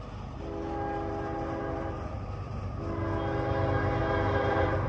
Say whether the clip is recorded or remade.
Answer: recorded